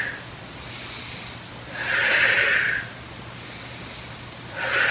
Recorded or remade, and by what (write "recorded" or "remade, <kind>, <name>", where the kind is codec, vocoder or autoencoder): recorded